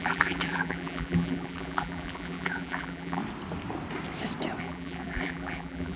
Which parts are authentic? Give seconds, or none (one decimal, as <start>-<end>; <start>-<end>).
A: 3.2-4.6